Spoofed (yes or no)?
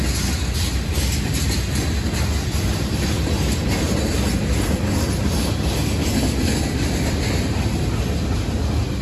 no